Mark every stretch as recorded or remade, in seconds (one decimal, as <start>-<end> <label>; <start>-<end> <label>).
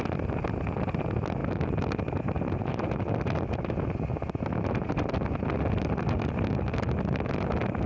0.0-7.9 recorded